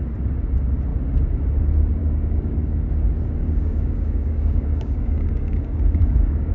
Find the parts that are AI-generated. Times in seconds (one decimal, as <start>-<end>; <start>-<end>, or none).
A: 2.0-2.9; 3.4-6.5

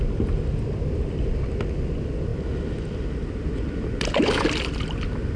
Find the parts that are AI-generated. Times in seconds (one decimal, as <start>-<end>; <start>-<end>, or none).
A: none

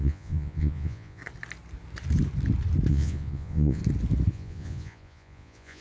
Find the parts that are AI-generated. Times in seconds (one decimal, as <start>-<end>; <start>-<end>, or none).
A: 0.0-1.2; 2.9-3.8; 4.3-5.8

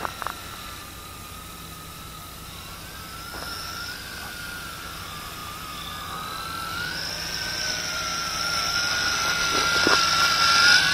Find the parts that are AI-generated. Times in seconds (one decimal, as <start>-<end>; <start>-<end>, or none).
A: none

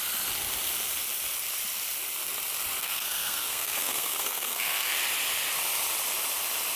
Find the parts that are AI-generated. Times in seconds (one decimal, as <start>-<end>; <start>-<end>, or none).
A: 2.8-5.0

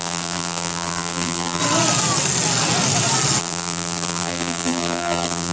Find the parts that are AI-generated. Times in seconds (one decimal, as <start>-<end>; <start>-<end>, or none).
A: 0.0-1.6; 3.4-5.5

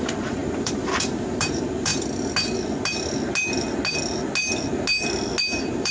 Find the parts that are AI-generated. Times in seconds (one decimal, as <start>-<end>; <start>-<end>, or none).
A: 0.0-1.9; 5.4-5.9

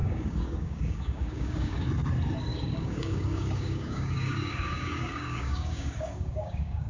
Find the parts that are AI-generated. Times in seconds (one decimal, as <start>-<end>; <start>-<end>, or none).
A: 0.0-1.9; 2.5-6.9